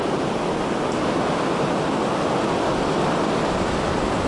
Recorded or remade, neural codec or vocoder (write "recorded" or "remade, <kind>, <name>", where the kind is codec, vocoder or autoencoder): recorded